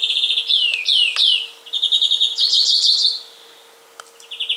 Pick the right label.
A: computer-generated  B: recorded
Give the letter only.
B